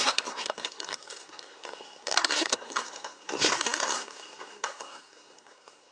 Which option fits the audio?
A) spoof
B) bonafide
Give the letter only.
A